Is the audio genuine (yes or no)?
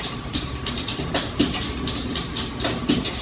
yes